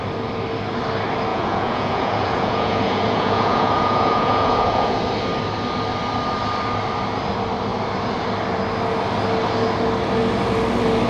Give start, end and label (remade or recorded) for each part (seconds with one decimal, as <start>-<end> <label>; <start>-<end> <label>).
0.0-1.3 recorded; 1.3-5.0 remade; 5.0-11.1 recorded